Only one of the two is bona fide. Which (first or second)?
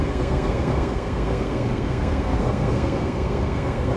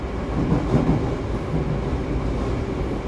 second